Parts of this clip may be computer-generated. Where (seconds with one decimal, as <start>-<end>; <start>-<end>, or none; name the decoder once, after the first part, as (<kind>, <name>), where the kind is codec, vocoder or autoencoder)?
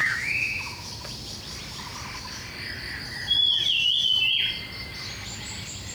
0.0-0.9 (autoencoder, DAC-VAE)